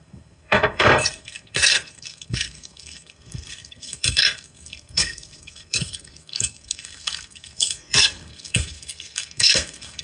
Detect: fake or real fake